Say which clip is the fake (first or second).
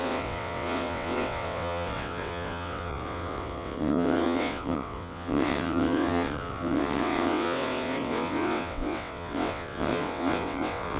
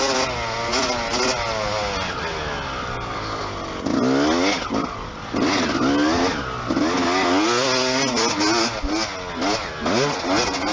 first